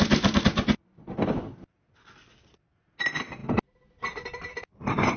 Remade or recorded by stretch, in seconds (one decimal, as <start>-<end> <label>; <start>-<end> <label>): 0.0-5.2 recorded